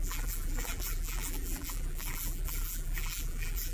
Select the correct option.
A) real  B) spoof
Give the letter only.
B